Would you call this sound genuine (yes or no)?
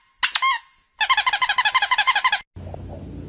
yes